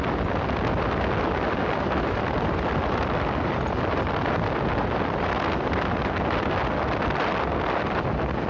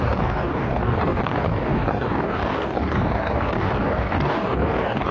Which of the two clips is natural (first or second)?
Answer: first